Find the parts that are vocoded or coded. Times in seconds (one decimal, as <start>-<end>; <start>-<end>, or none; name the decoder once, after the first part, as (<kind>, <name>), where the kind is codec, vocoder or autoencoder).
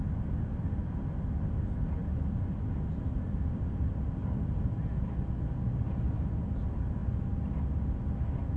none